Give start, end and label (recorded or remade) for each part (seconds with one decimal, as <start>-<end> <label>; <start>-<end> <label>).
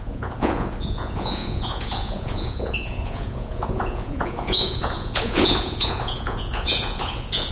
0.0-7.5 remade